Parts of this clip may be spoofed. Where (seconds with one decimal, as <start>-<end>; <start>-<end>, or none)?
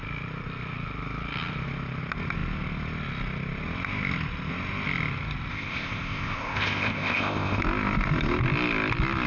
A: 5.5-7.6